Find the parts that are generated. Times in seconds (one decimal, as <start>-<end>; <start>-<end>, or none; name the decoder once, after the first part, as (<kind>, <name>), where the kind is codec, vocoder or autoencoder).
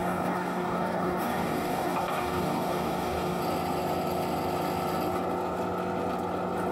0.0-3.4 (codec, DAC)